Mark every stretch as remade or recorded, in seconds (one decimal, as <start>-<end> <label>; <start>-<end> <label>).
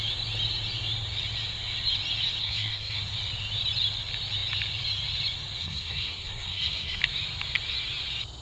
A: 0.0-2.4 recorded; 2.4-3.0 remade; 3.0-5.6 recorded; 5.6-7.0 remade; 7.0-8.4 recorded